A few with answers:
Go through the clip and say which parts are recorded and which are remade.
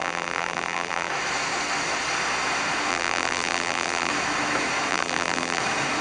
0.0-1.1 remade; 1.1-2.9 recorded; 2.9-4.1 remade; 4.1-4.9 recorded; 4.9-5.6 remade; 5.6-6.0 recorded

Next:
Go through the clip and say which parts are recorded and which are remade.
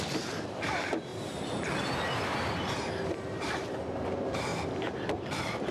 0.0-1.1 remade; 1.1-3.4 recorded; 3.4-4.5 remade; 4.5-5.7 recorded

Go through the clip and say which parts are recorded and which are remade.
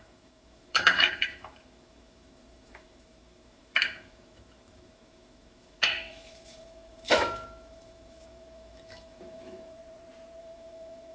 0.0-9.8 remade; 9.8-10.4 recorded; 10.4-11.1 remade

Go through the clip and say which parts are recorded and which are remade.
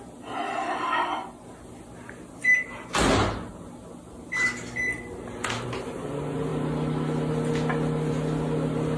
0.0-9.0 recorded